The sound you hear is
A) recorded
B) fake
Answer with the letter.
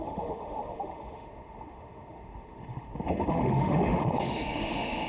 B